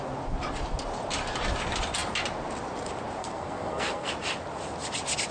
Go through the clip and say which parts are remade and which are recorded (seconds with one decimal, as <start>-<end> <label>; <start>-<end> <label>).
0.0-3.2 recorded; 3.2-4.1 remade; 4.1-5.3 recorded